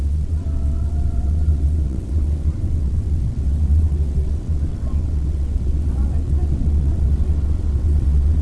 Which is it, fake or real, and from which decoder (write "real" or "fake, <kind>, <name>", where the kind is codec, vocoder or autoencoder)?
fake, vocoder, WaveNeXt